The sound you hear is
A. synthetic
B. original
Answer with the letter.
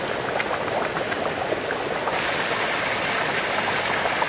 B